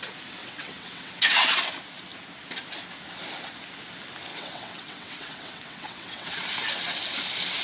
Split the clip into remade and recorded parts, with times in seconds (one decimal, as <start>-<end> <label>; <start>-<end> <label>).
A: 0.0-0.4 recorded; 0.4-1.6 remade; 1.6-4.3 recorded; 4.3-6.3 remade; 6.3-7.6 recorded